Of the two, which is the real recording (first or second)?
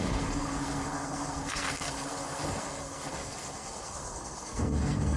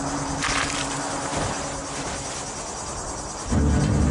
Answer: second